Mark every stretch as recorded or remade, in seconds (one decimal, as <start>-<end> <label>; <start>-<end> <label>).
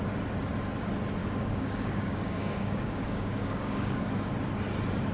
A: 0.0-1.2 recorded; 1.2-4.3 remade; 4.3-5.1 recorded